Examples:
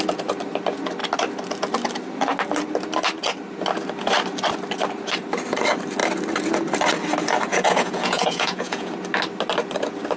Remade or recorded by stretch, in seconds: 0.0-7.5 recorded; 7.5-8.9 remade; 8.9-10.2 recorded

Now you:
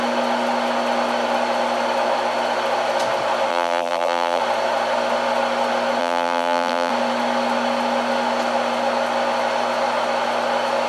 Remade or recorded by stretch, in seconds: 0.0-3.5 recorded; 3.5-4.4 remade; 4.4-6.0 recorded; 6.0-6.9 remade; 6.9-10.9 recorded

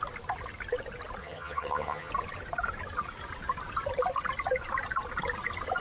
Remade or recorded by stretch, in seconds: 0.0-1.2 recorded; 1.2-2.1 remade; 2.1-5.8 recorded